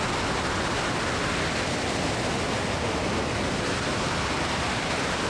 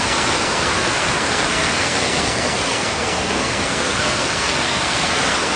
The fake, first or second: second